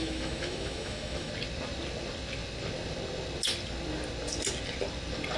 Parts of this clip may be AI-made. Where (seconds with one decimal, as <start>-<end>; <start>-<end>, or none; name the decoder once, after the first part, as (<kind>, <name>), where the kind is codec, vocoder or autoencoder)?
0.0-1.3 (autoencoder, DAC-VAE)